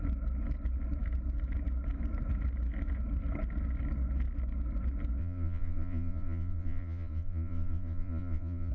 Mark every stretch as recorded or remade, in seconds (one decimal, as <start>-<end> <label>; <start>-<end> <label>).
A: 0.0-5.2 recorded; 5.2-8.7 remade